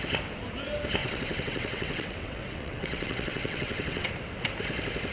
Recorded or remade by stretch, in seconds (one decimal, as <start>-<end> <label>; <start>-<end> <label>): 0.0-1.0 recorded; 1.0-4.1 remade; 4.1-5.1 recorded

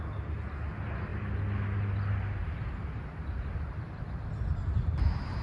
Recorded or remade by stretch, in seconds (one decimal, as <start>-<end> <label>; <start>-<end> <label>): 0.0-5.4 recorded

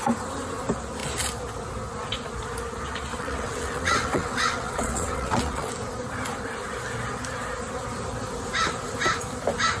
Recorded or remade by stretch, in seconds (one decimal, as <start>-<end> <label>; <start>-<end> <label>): 0.0-3.1 recorded; 3.1-5.7 remade; 5.7-9.8 recorded

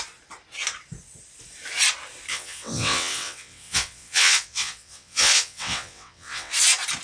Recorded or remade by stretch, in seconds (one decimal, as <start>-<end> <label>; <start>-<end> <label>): 0.0-2.3 recorded; 2.3-6.5 remade; 6.5-7.0 recorded